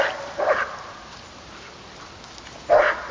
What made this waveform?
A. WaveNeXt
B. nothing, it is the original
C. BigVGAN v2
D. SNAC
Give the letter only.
B